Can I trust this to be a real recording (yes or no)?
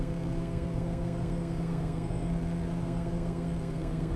no